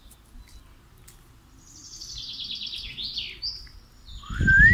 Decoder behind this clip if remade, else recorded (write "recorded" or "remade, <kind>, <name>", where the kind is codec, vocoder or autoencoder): recorded